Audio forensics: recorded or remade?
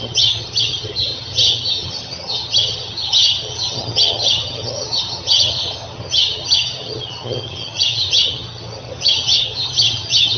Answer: remade